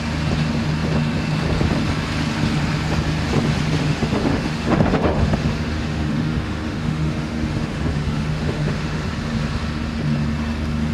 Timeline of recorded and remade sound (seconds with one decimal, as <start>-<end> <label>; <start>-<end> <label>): 0.0-3.8 recorded; 3.8-9.1 remade; 9.1-10.9 recorded